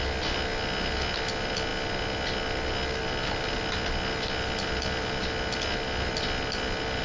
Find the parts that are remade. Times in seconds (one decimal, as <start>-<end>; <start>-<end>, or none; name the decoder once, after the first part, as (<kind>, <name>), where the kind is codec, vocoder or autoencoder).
none